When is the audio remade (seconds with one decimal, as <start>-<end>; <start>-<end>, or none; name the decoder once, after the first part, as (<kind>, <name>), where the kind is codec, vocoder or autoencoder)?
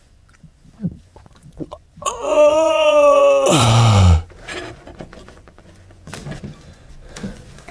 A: 0.0-3.2 (vocoder, Vocos); 4.7-7.7